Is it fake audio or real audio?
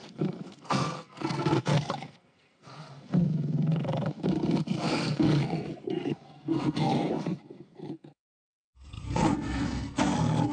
fake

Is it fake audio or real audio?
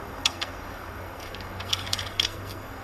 fake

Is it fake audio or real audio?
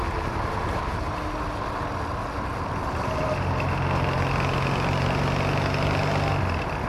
real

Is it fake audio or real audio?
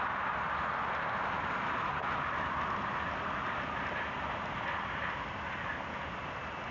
real